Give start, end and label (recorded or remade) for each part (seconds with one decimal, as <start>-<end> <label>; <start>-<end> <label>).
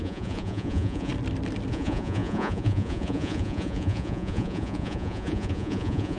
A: 0.0-1.1 remade; 1.1-1.7 recorded; 1.7-6.2 remade